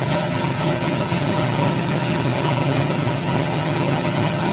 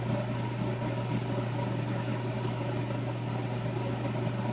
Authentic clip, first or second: second